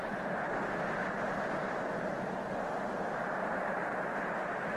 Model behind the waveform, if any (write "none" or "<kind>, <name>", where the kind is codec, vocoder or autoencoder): none